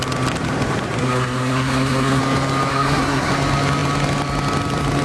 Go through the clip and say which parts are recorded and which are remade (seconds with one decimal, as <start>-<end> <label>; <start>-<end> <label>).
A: 0.0-1.0 recorded; 1.0-2.2 remade; 2.2-2.7 recorded; 2.7-3.3 remade; 3.3-5.0 recorded